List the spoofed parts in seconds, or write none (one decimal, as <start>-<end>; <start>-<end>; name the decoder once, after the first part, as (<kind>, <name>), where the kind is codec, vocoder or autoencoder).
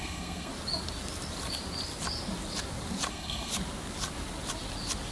0.0-0.5 (codec, SNAC); 3.1-3.5